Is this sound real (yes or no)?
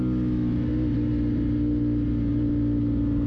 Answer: yes